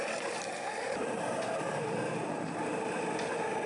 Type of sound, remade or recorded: recorded